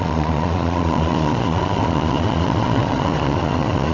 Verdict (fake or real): fake